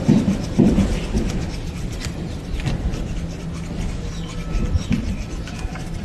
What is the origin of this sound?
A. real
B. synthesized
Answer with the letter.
A